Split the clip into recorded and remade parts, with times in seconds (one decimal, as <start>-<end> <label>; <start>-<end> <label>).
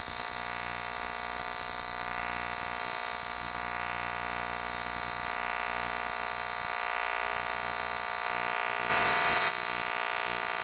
0.0-8.9 recorded; 8.9-9.5 remade; 9.5-10.6 recorded